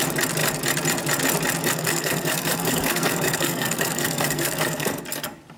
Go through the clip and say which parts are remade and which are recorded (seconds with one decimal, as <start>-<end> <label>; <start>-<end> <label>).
0.0-1.6 recorded; 1.6-5.0 remade; 5.0-5.6 recorded